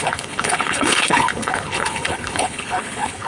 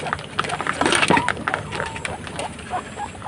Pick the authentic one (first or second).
second